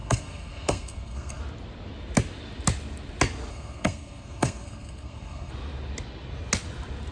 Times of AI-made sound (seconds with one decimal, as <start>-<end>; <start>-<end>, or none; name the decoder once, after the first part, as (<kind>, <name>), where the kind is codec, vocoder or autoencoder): 0.0-1.4 (codec, SNAC); 3.5-5.5